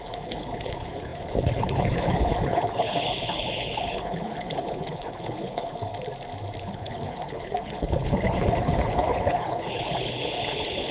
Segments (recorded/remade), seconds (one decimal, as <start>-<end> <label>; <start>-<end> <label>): 0.0-5.9 remade; 5.9-6.6 recorded; 6.6-10.9 remade